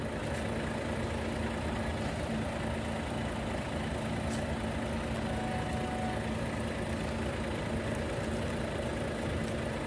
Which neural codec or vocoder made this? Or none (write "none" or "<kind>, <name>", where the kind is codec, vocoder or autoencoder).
none